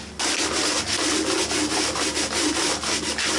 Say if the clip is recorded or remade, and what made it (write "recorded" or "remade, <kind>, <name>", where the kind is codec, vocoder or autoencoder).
recorded